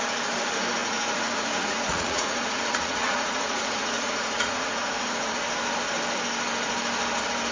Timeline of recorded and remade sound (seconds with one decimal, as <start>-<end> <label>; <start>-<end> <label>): 0.0-0.8 recorded; 0.8-5.3 remade; 5.3-7.5 recorded